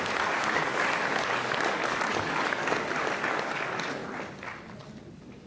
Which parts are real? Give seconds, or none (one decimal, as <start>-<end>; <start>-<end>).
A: 4.0-5.1